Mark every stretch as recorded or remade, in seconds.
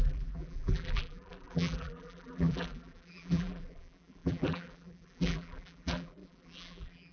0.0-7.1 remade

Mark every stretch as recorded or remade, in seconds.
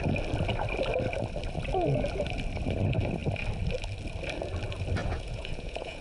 0.0-5.0 recorded; 5.0-6.0 remade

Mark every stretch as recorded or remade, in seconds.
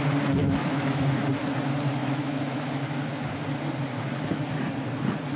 0.0-0.4 recorded; 0.4-1.0 remade; 1.0-2.0 recorded; 2.0-2.7 remade; 2.7-5.4 recorded